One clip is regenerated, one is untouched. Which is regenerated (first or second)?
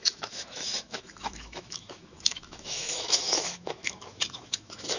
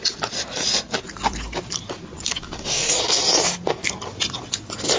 first